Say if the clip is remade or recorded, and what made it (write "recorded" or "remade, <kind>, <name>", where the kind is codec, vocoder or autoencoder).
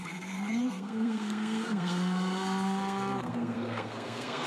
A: remade, codec, SNAC